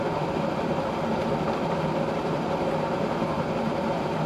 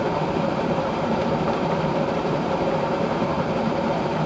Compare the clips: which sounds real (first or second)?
first